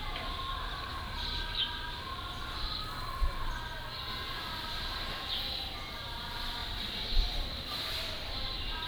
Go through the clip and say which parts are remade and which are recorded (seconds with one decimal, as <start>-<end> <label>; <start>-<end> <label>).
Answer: 0.0-0.9 recorded; 0.9-1.4 remade; 1.4-6.6 recorded; 6.6-8.9 remade